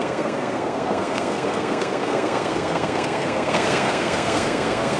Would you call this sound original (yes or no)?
no